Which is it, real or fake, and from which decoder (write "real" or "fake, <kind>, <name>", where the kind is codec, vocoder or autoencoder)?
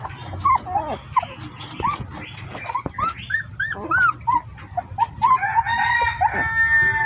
real